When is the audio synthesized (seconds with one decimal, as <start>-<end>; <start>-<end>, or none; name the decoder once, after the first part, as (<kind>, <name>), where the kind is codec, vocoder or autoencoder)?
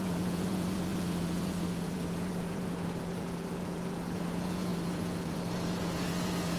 0.0-6.6 (vocoder, Vocos)